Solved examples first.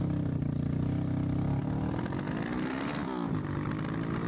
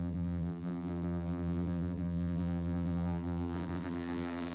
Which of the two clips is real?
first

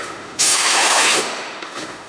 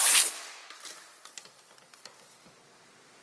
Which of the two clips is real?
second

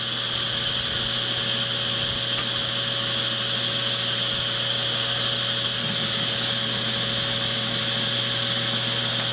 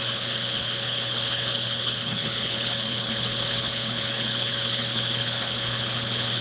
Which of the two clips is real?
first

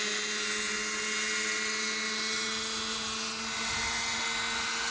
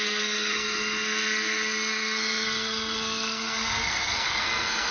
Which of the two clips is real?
first